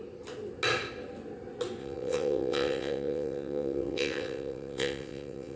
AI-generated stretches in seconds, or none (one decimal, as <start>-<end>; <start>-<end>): 1.8-5.6